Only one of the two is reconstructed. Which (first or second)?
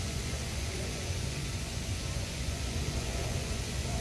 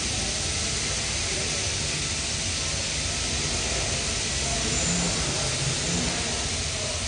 first